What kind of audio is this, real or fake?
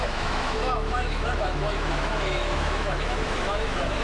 fake